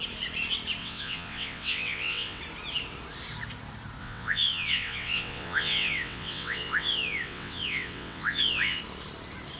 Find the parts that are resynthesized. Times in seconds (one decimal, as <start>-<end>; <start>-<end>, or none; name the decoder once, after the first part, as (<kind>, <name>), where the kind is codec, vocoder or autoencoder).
0.8-2.4 (vocoder, WaveNeXt); 4.0-8.8

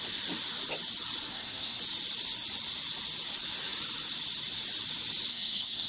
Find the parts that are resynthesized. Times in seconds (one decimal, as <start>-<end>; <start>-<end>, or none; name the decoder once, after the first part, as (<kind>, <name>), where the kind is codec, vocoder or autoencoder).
1.3-1.8 (codec, SNAC); 5.3-5.9

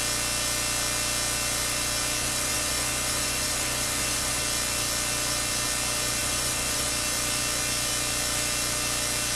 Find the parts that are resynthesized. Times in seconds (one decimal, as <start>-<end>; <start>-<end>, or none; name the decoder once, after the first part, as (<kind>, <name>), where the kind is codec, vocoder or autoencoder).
2.2-4.4 (vocoder, Vocos); 6.2-6.9

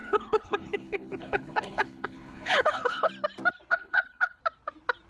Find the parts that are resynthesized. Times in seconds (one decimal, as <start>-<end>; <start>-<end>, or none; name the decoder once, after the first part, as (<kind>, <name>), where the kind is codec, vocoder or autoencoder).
0.0-3.1 (codec, HILCodec); 3.7-4.4

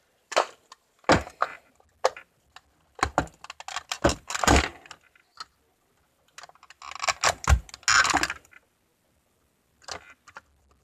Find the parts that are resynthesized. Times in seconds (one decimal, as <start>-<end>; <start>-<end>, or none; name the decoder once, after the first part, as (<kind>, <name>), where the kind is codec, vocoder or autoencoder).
none

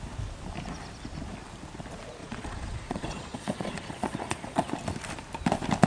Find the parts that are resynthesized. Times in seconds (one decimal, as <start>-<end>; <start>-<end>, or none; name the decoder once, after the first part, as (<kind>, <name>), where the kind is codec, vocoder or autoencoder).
2.2-4.7 (vocoder, Vocos)

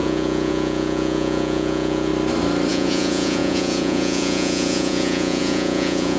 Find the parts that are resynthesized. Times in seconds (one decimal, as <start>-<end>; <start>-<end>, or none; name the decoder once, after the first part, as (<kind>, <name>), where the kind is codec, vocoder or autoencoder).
0.0-2.1 (vocoder, Vocos); 2.7-6.2

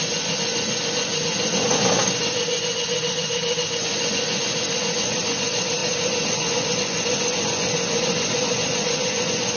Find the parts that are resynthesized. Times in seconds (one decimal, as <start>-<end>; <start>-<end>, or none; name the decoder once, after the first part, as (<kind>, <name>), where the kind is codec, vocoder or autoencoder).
0.0-9.6 (vocoder, Vocos)